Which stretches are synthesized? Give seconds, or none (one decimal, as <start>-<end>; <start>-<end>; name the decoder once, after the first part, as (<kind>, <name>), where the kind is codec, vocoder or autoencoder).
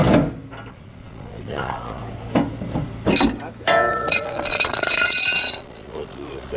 0.7-2.0 (vocoder, Vocos); 3.9-6.6